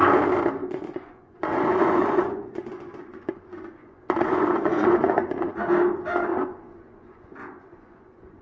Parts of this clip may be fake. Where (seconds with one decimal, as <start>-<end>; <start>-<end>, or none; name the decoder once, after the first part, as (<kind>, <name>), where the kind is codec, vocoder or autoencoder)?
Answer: 0.6-5.5 (vocoder, Vocos); 6.3-8.4